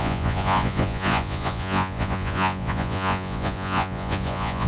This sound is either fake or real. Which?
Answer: fake